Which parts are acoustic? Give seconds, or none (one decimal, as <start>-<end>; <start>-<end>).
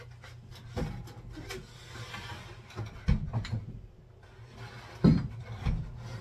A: 0.0-6.2